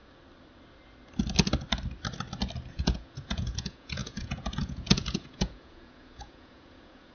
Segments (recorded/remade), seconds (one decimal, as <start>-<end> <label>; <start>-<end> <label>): 0.0-2.7 recorded; 2.7-7.1 remade